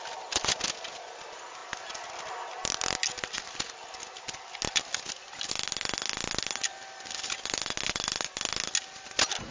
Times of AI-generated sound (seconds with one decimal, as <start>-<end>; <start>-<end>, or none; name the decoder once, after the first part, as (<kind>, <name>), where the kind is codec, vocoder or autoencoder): none